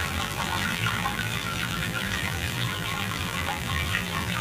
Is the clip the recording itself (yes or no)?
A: no